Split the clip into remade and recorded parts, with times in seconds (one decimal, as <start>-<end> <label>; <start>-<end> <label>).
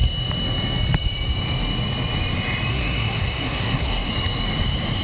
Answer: 0.0-2.7 recorded; 2.7-4.1 remade; 4.1-5.0 recorded